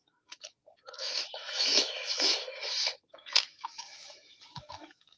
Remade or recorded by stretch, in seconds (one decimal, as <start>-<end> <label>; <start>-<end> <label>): 0.0-5.2 remade

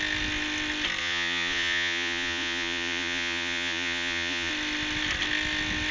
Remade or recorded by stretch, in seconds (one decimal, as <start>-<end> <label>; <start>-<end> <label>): 0.0-1.0 recorded; 1.0-4.5 remade; 4.5-5.9 recorded

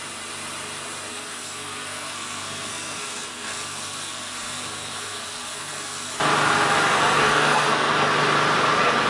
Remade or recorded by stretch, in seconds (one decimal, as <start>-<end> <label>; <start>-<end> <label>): 0.0-1.1 recorded; 1.1-6.1 remade; 6.1-7.2 recorded; 7.2-7.9 remade; 7.9-9.1 recorded